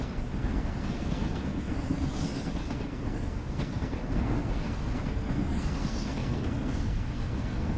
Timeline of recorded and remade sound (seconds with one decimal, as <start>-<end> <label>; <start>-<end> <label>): 0.0-7.8 remade